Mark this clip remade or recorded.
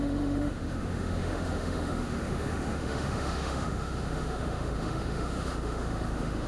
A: remade